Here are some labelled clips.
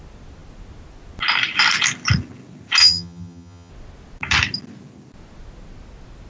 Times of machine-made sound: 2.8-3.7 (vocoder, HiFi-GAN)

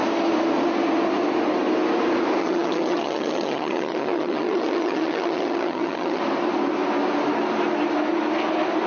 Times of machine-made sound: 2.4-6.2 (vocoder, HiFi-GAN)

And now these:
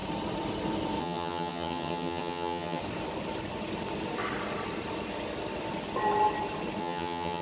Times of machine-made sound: 1.0-2.8 (vocoder, HiFi-GAN); 6.8-7.4

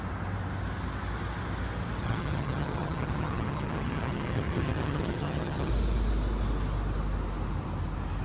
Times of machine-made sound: 2.0-5.7 (vocoder, HiFi-GAN)

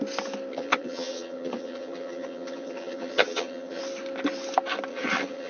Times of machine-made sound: 0.5-3.8 (vocoder, HiFi-GAN); 4.9-5.5

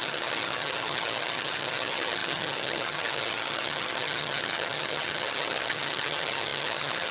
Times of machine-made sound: 0.0-7.1 (vocoder, HiFi-GAN)